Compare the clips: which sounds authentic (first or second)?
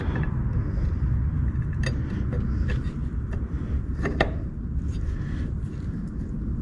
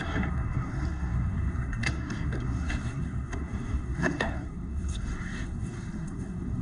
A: first